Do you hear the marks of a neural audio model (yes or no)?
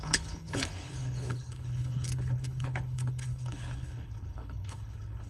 yes